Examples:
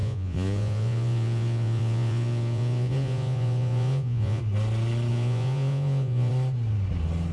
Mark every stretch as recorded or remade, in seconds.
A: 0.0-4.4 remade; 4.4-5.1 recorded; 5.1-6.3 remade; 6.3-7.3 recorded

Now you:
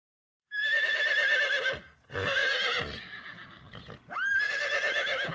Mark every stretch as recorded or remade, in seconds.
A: 0.0-0.6 recorded; 0.6-1.4 remade; 1.4-5.3 recorded

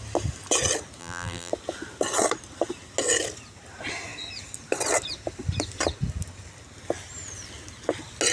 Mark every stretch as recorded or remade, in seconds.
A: 0.0-1.0 recorded; 1.0-1.5 remade; 1.5-8.3 recorded

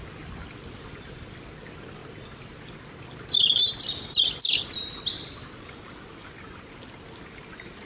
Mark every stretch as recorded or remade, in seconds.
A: 0.0-7.9 recorded

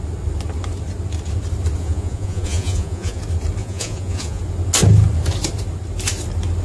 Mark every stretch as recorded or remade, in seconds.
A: 0.0-1.8 recorded; 1.8-3.2 remade; 3.2-3.6 recorded; 3.6-4.4 remade; 4.4-6.6 recorded

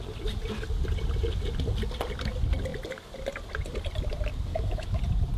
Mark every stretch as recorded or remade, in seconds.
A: 0.0-4.5 recorded; 4.5-5.0 remade; 5.0-5.4 recorded